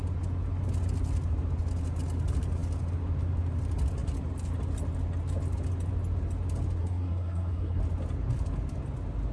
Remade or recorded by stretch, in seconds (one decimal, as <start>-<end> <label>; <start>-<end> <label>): 0.0-6.8 recorded; 6.8-7.8 remade; 7.8-9.3 recorded